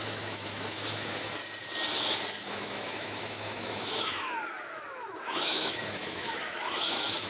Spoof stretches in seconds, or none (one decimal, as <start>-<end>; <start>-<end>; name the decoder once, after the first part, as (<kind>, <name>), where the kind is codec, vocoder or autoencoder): 0.0-1.4 (autoencoder, DAC-VAE); 2.4-7.3